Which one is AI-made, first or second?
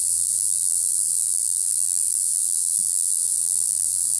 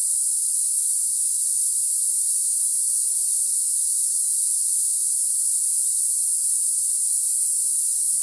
first